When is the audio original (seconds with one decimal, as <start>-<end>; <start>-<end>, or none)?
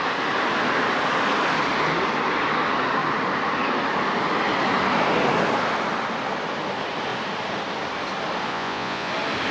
0.0-8.5; 9.1-9.5